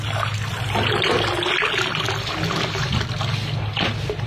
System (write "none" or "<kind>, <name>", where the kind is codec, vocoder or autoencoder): none